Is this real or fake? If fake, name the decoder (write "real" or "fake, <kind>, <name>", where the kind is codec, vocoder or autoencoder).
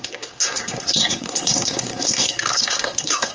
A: fake, codec, SNAC